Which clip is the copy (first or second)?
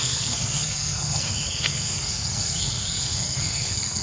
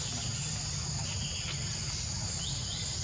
first